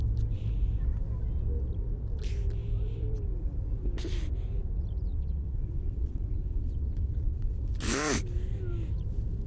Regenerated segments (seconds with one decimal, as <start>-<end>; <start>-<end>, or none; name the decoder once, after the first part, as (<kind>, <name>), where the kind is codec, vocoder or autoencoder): 5.1-7.6 (vocoder, WaveNeXt)